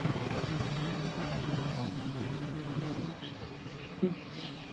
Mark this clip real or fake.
fake